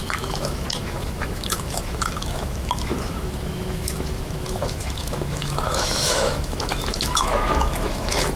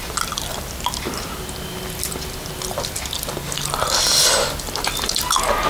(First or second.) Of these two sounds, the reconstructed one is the first